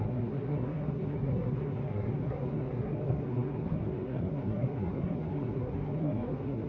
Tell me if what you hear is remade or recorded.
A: remade